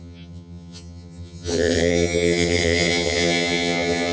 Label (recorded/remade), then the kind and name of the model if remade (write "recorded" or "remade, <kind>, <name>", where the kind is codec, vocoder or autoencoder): remade, vocoder, HiFi-GAN